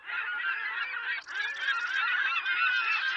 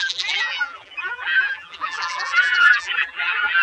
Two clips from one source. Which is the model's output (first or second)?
second